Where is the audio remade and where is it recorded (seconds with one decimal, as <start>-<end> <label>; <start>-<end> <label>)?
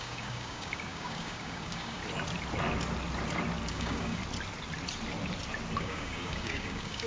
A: 0.0-2.0 remade; 2.0-3.7 recorded; 3.7-4.2 remade; 4.2-5.8 recorded; 5.8-7.1 remade